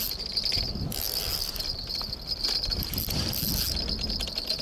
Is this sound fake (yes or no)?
no